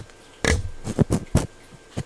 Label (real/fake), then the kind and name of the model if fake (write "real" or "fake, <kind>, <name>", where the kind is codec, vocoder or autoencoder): real